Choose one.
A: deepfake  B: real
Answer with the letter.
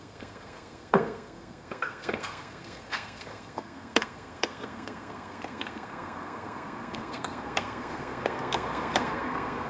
A